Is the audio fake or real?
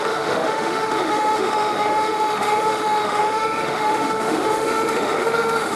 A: fake